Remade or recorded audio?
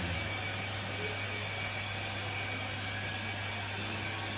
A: recorded